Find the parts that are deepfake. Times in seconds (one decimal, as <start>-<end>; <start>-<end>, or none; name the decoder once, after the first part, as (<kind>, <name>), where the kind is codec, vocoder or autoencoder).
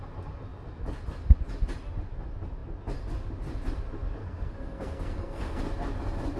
4.2-5.6 (codec, SNAC)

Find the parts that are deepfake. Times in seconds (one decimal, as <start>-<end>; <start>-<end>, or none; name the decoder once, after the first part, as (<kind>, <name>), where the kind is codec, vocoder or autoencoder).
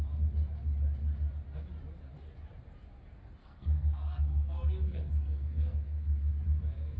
3.4-6.3 (codec, SNAC)